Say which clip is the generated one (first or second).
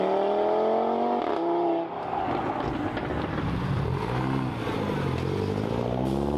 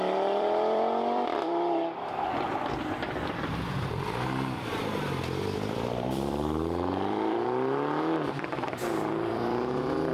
second